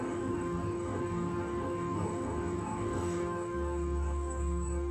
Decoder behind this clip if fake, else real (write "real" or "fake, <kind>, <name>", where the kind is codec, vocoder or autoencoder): fake, codec, DAC